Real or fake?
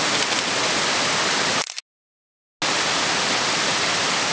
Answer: real